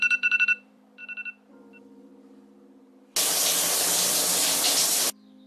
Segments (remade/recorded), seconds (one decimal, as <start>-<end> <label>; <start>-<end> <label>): 0.0-1.0 remade; 1.0-1.6 recorded; 1.6-2.1 remade; 2.1-5.5 recorded